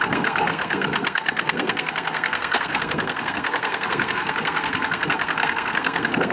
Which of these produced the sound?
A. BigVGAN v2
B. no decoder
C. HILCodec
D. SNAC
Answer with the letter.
D